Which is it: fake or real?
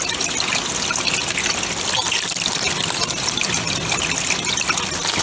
real